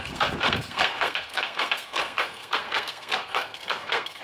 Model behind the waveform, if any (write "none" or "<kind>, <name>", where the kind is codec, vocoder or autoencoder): codec, SNAC